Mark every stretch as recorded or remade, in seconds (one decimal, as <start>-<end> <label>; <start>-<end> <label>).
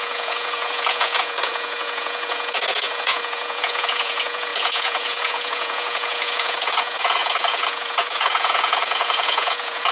0.0-9.9 remade